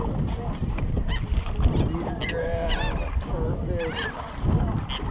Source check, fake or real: real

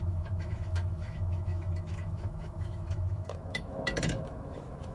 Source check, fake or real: fake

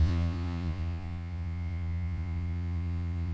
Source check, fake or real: fake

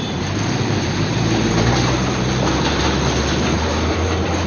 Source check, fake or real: fake